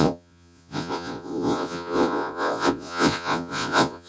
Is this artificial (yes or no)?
yes